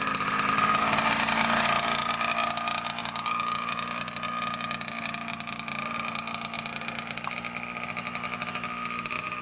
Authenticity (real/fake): real